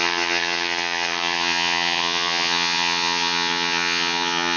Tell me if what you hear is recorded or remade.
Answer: remade